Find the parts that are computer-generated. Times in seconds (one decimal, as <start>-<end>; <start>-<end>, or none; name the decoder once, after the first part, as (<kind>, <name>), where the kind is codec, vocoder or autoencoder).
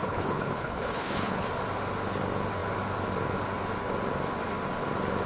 0.0-1.5 (codec, HILCodec)